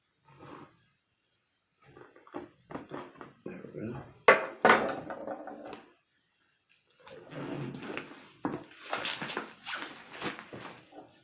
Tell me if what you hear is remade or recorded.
recorded